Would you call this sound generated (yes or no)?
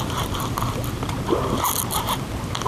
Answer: no